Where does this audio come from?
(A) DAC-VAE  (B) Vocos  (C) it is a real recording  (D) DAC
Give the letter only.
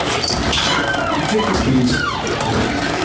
C